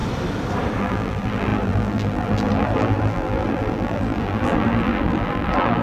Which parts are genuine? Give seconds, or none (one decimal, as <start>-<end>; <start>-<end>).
0.0-0.8